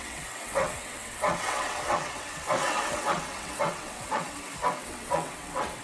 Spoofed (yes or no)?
yes